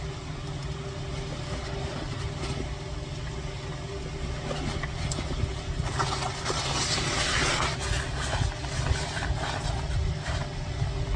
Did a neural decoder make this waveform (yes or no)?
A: no